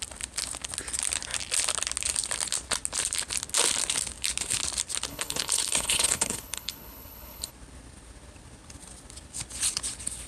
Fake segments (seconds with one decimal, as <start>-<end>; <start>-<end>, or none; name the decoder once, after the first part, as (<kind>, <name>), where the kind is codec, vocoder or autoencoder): 5.1-7.5 (codec, HILCodec)